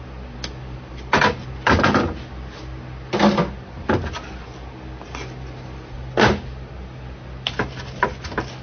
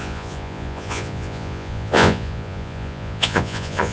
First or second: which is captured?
first